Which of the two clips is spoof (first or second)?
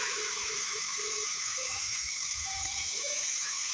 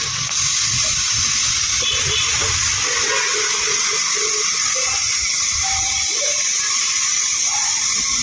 first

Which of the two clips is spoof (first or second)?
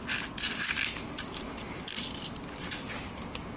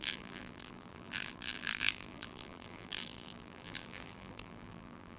second